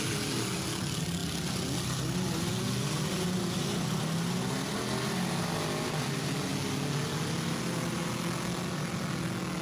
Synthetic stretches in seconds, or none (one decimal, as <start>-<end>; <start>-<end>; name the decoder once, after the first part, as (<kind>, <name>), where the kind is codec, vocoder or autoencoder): none